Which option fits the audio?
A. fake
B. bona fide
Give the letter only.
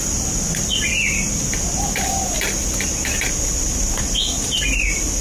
B